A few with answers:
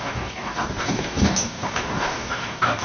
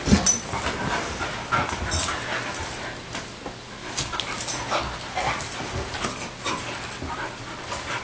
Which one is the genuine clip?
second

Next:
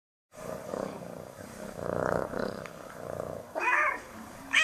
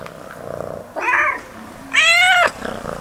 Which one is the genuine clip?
second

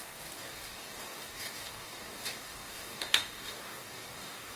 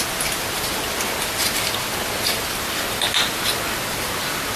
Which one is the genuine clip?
second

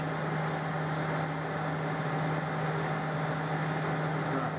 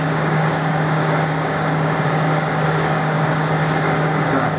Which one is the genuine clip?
first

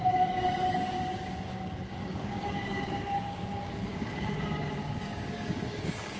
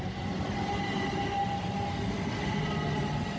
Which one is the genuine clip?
second